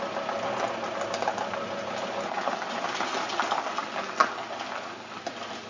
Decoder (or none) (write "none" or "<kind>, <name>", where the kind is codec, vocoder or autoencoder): none